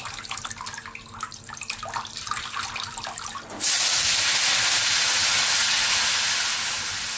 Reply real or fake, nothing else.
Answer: real